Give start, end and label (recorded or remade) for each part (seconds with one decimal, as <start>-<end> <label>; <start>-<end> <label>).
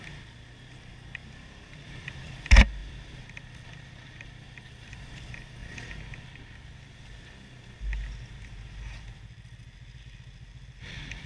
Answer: 0.0-1.2 recorded; 1.2-2.3 remade; 2.3-2.8 recorded; 2.8-5.1 remade; 5.1-11.3 recorded